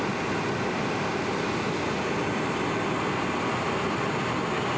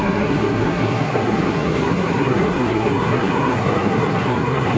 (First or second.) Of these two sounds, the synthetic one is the second